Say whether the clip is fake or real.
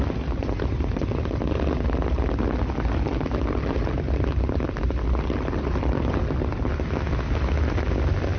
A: real